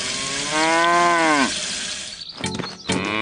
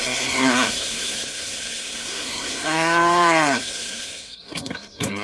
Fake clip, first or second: second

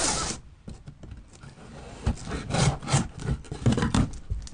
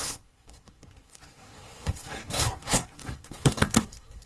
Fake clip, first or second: second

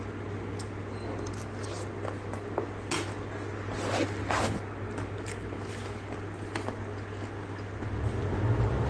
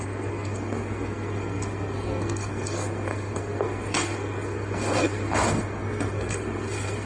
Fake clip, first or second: second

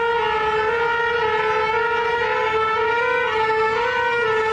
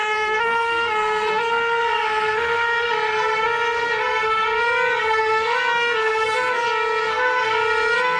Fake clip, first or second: second